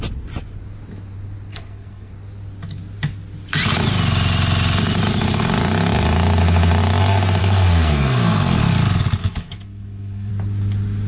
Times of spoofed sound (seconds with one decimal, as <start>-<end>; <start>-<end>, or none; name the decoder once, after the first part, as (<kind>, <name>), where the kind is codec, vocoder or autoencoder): 1.5-2.1 (codec, SNAC); 7.4-8.6; 9.2-10.3